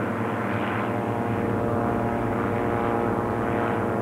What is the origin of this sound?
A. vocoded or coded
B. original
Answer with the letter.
B